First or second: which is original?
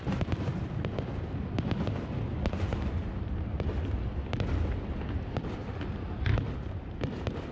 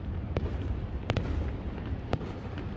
first